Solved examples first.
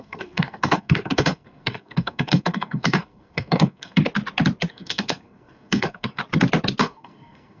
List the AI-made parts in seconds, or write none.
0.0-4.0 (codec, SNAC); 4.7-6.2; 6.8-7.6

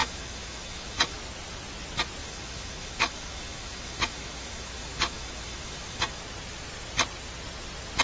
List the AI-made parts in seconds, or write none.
0.0-1.2 (autoencoder, DAC-VAE); 2.2-6.2